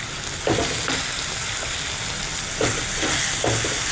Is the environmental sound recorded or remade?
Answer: recorded